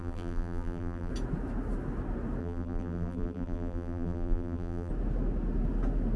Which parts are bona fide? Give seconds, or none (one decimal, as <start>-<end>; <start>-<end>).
1.1-2.4; 4.9-6.2